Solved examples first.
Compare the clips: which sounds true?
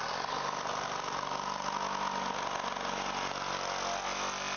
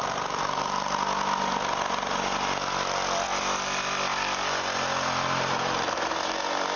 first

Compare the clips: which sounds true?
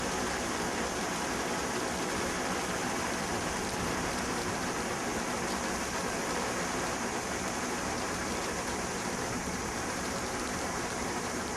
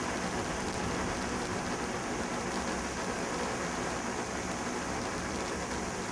second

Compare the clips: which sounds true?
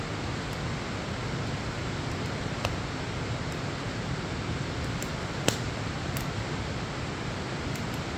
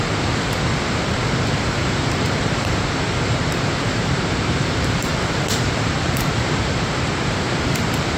first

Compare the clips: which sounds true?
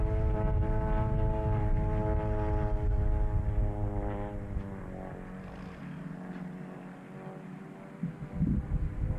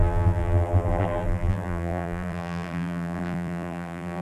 first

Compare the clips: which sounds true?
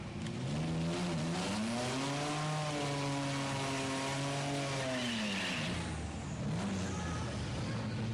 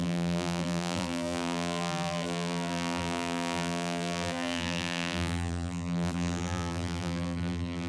first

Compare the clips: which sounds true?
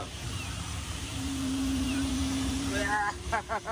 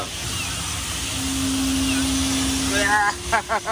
second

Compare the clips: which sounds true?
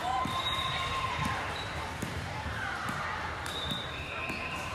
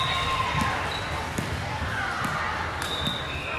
second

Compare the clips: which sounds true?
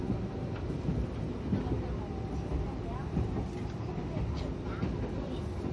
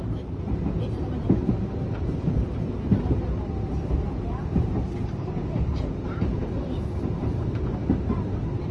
first